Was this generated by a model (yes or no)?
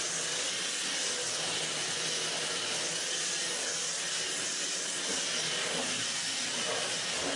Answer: no